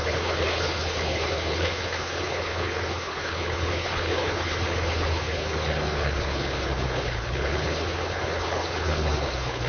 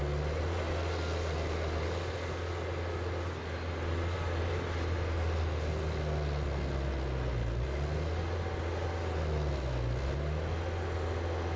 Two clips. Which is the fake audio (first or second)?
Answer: first